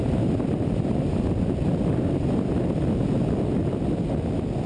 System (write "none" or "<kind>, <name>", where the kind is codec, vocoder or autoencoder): none